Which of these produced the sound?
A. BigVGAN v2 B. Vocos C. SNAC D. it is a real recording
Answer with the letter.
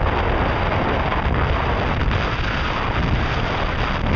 D